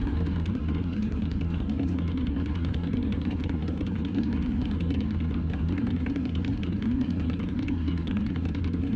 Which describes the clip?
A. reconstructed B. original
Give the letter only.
A